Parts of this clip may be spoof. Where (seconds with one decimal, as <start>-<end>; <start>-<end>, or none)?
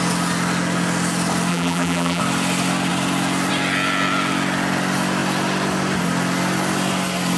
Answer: 1.5-2.2